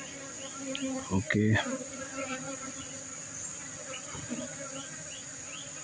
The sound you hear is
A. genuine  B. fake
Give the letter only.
A